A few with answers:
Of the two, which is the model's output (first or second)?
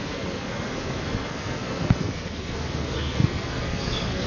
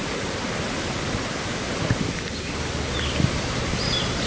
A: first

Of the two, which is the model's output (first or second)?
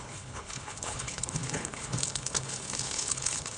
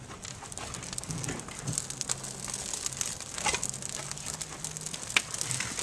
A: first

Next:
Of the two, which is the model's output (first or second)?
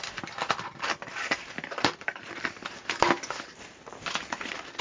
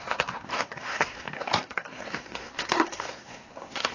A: second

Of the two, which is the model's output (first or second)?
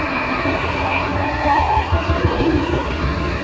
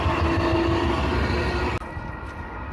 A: first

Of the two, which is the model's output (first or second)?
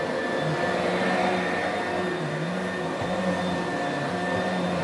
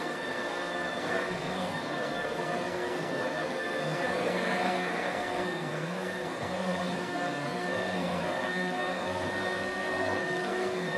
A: second